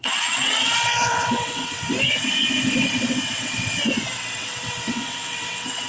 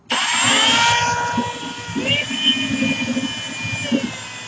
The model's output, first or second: first